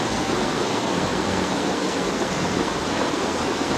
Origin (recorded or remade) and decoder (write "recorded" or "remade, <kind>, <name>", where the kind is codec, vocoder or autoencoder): remade, codec, SNAC